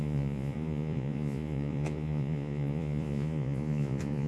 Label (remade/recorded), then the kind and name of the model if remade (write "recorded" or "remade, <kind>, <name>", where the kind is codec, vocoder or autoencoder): remade, vocoder, Vocos